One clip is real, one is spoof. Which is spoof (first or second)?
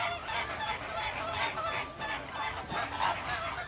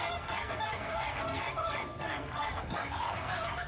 second